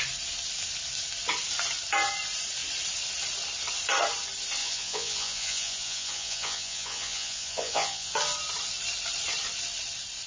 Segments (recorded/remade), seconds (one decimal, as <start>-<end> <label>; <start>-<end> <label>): 0.0-4.6 recorded; 4.6-8.1 remade; 8.1-10.3 recorded